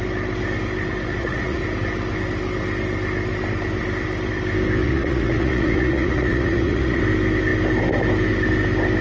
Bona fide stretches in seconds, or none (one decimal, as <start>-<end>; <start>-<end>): 0.0-1.1; 1.6-4.8; 7.0-9.0